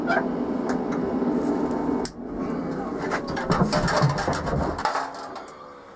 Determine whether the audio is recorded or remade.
recorded